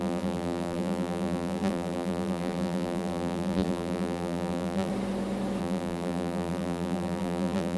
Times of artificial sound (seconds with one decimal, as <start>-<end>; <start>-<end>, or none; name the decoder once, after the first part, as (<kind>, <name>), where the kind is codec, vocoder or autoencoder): 0.0-4.9 (vocoder, BigVGAN v2); 5.6-7.8